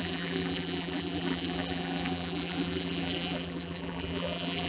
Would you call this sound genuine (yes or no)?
no